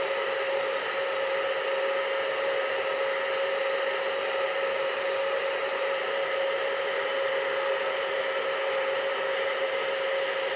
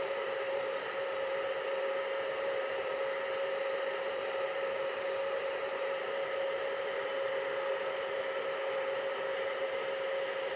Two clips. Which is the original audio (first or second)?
first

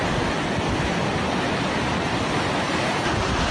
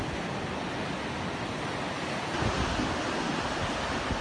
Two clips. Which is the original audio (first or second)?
second